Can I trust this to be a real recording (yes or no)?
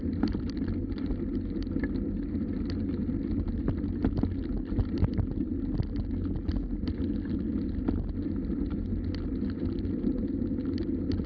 yes